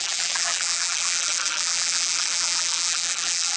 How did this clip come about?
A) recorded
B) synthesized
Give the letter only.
B